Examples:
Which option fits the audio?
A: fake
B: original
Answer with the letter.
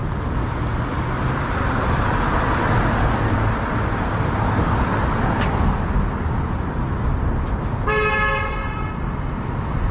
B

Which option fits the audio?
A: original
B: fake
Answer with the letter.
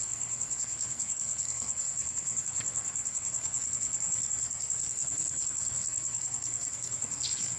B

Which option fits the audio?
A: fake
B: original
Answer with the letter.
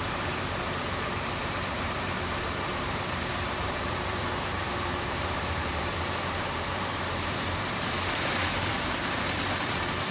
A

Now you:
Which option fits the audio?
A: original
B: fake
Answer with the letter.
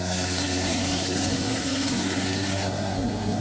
B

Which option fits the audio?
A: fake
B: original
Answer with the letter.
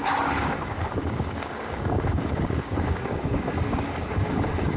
A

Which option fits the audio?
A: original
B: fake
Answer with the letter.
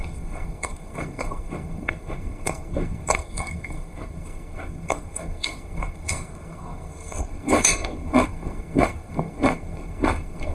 B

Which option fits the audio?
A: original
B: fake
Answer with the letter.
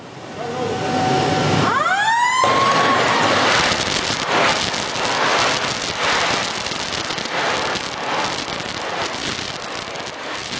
A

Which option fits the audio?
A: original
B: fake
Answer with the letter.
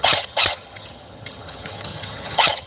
B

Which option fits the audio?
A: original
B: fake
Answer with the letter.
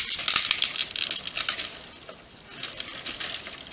A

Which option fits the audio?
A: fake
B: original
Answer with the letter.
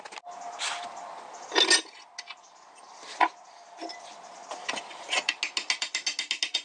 B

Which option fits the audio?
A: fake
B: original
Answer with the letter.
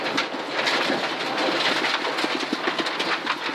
B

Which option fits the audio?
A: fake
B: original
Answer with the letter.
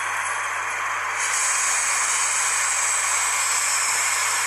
B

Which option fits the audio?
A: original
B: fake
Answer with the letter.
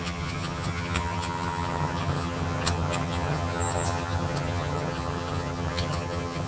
B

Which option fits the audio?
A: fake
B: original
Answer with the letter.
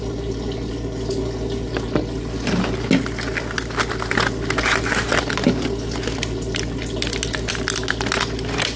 B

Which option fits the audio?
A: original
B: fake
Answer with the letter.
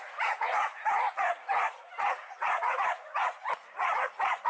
B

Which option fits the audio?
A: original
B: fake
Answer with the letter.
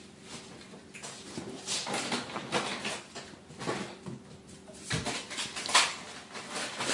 A